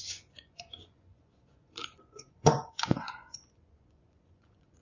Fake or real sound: fake